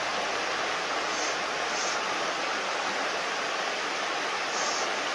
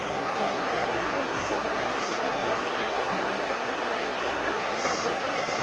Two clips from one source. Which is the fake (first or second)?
second